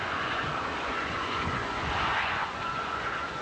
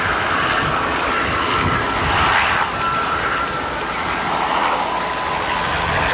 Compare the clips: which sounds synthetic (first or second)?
first